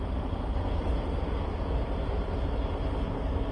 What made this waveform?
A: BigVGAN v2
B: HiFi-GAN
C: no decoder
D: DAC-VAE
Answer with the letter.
C